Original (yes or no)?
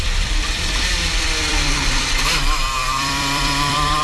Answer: no